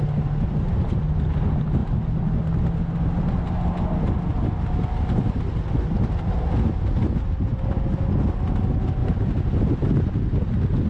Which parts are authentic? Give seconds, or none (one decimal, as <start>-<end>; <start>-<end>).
0.0-9.0; 10.2-10.9